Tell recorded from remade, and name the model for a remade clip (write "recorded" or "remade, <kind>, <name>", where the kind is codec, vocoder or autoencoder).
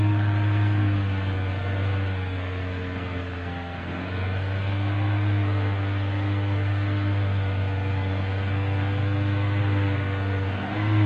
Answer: remade, codec, SNAC